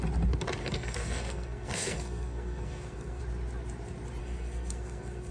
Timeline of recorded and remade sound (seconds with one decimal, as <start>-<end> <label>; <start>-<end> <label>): 0.0-0.6 recorded; 0.6-3.2 remade; 3.2-4.2 recorded; 4.2-5.3 remade